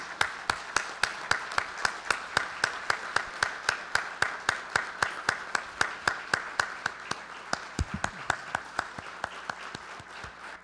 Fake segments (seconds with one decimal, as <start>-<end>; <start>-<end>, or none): none

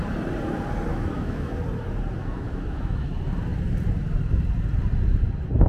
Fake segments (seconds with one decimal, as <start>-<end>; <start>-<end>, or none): 0.9-1.6; 2.2-3.1